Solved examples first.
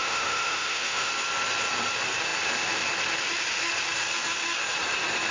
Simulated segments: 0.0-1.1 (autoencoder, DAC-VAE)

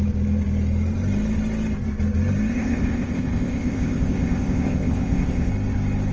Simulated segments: 2.5-5.5 (codec, ZipCodec)

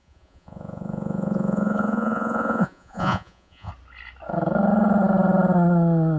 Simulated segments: 0.0-3.7 (vocoder, Vocos)

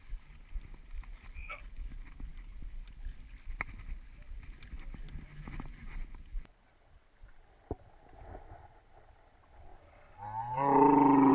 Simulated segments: none